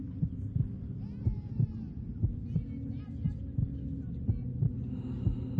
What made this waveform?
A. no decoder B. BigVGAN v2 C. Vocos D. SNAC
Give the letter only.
A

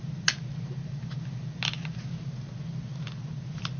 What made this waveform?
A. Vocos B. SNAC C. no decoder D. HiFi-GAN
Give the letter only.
C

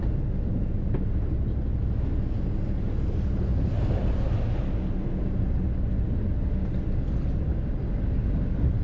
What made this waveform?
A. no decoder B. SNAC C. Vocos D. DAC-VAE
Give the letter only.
A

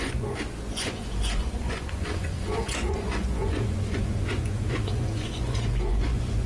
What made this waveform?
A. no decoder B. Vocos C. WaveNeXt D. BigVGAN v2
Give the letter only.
B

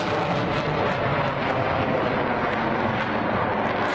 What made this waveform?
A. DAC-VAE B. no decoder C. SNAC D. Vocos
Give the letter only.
B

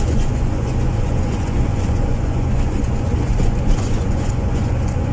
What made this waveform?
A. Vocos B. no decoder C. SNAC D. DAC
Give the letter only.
A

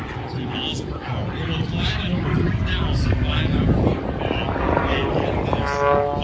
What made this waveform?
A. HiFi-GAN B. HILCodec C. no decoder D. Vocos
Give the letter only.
C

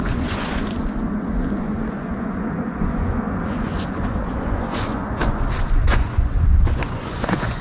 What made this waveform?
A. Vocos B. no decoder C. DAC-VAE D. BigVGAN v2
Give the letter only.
A